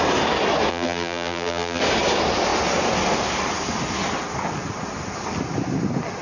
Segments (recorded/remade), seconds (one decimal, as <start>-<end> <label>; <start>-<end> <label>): 0.0-0.7 recorded; 0.7-1.8 remade; 1.8-6.2 recorded